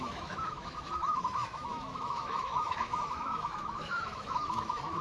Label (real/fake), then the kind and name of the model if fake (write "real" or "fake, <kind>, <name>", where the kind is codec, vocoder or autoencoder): fake, autoencoder, DAC-VAE